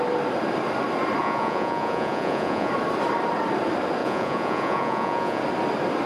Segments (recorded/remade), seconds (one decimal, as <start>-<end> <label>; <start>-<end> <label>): 0.0-1.2 recorded; 1.2-2.7 remade; 2.7-4.0 recorded; 4.0-5.4 remade; 5.4-6.1 recorded